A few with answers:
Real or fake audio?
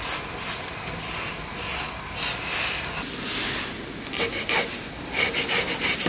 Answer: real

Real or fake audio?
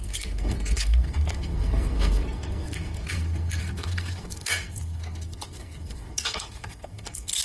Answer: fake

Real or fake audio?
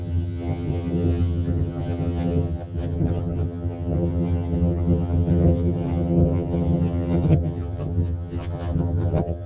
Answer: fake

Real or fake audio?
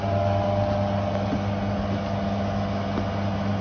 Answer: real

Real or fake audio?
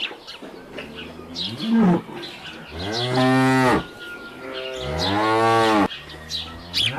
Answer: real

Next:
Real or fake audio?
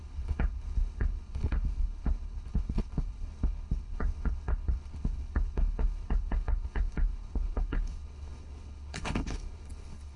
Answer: fake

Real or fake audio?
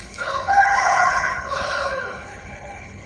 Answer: fake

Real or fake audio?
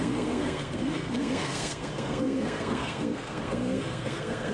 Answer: fake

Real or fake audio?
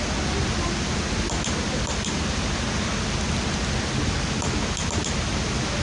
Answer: real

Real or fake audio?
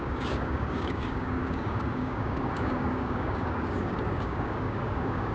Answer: fake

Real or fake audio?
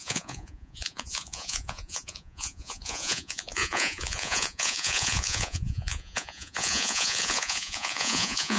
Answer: fake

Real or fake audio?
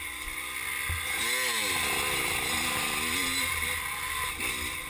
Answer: real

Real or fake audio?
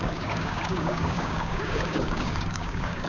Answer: fake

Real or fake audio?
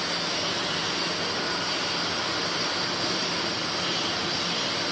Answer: real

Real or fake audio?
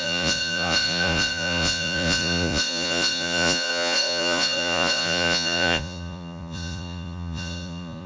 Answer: fake